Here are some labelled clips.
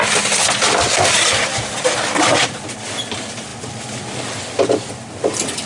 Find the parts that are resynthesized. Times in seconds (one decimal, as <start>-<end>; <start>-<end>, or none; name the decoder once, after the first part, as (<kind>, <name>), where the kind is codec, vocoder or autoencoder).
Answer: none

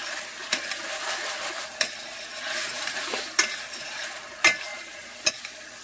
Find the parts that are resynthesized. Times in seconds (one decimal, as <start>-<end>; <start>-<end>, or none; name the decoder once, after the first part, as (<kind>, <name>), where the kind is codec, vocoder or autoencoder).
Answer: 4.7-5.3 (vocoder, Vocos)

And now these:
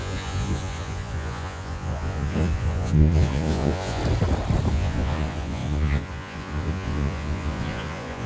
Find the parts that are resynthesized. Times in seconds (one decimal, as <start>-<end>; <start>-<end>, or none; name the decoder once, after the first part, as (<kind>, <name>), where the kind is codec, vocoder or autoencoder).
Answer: 0.0-4.0 (vocoder, Vocos); 4.7-8.3

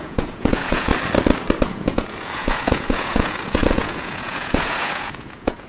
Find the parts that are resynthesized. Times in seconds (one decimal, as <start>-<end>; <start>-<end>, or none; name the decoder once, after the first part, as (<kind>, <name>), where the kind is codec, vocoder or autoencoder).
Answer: 0.0-0.9 (vocoder, Vocos); 1.7-5.7

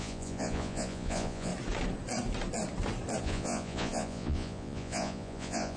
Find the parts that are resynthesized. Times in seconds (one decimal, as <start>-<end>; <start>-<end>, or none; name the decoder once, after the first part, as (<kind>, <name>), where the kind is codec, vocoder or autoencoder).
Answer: 0.0-1.5 (vocoder, Vocos); 3.2-5.8